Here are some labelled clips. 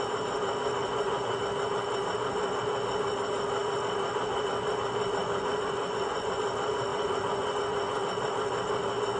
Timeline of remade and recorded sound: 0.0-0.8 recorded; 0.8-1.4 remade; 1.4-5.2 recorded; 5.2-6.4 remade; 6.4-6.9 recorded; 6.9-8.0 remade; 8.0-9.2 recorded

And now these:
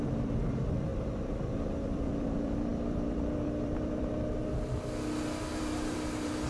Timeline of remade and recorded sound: 0.0-4.4 remade; 4.4-5.6 recorded; 5.6-6.5 remade